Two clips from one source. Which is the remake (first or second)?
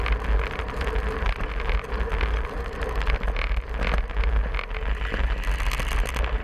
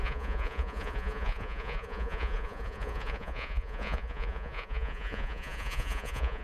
second